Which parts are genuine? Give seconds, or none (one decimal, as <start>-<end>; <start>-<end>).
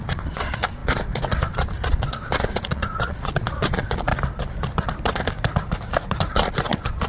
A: 4.1-6.3